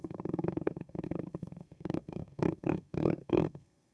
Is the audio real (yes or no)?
no